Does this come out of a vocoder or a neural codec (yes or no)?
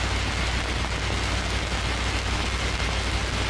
no